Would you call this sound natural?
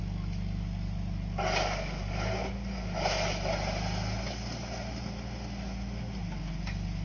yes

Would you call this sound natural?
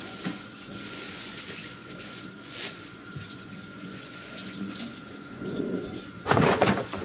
no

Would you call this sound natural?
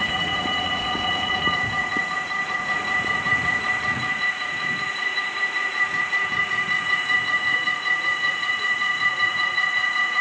no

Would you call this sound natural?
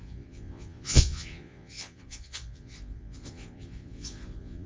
no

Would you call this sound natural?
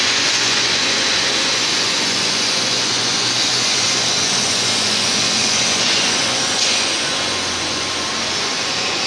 no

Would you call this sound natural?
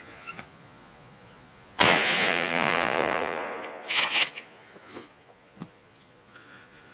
no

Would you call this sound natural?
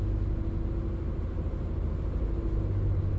yes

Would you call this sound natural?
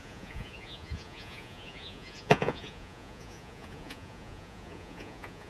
no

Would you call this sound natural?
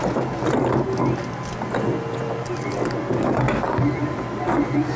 yes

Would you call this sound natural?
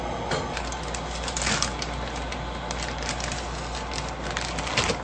yes